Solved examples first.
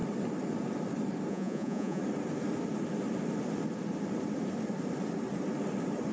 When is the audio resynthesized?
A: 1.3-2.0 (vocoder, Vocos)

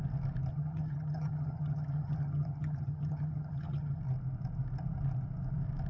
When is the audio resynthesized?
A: 0.5-4.0 (vocoder, HiFi-GAN)

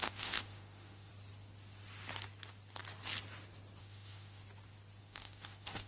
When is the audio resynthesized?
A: 0.0-1.1 (autoencoder, DAC-VAE); 3.8-4.4; 5.0-5.9

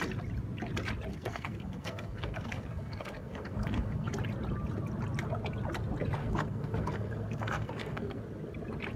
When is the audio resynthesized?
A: 1.1-4.1 (codec, SNAC); 6.2-8.2

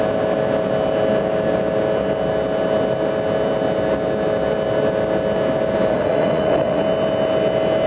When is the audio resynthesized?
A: 5.9-6.8 (vocoder, Vocos)